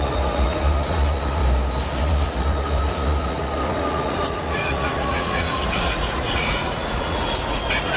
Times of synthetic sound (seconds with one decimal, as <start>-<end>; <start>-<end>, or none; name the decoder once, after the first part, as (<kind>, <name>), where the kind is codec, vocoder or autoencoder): 0.0-1.4 (vocoder, Vocos); 1.9-8.0